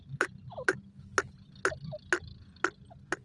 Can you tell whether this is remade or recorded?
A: recorded